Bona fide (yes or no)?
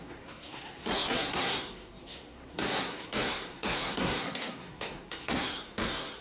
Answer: no